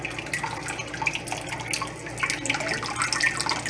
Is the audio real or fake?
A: real